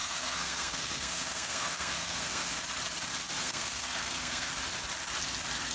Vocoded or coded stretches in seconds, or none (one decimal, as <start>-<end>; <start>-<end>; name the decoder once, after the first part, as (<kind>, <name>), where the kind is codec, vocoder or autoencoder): 0.0-2.6 (codec, SNAC); 3.4-4.5